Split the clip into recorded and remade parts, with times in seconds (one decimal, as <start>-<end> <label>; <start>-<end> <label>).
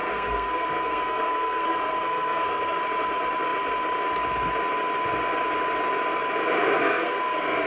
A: 0.0-2.8 remade; 2.8-6.8 recorded; 6.8-7.7 remade